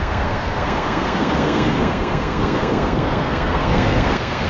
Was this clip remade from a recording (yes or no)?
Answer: yes